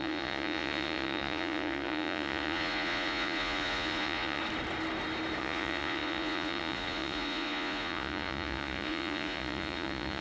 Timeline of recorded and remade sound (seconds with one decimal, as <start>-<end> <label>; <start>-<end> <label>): 0.0-4.4 remade; 4.4-5.4 recorded; 5.4-10.2 remade